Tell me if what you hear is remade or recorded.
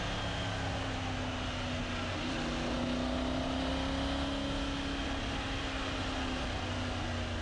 recorded